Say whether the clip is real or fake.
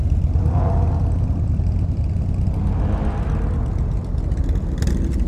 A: real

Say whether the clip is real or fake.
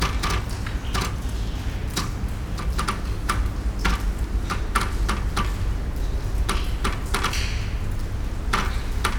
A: real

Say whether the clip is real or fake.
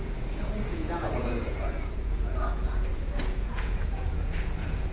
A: fake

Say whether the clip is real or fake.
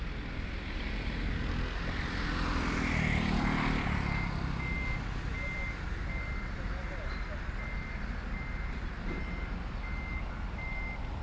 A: real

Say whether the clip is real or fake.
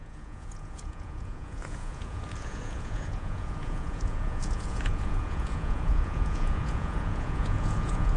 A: fake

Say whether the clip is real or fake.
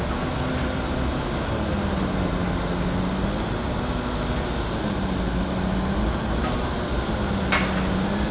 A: real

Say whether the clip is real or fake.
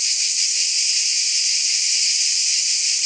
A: fake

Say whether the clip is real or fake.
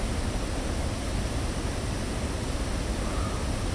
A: real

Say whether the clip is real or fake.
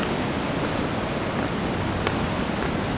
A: real